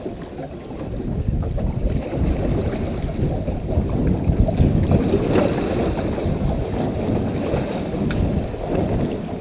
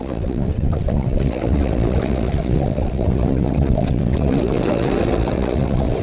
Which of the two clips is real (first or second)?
first